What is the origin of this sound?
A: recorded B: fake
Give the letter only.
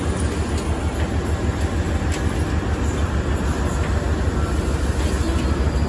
A